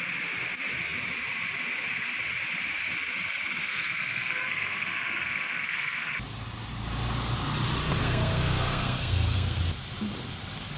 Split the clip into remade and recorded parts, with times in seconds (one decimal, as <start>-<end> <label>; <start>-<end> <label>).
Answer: 0.0-3.6 recorded; 3.6-6.1 remade; 6.1-8.0 recorded; 8.0-9.6 remade; 9.6-10.8 recorded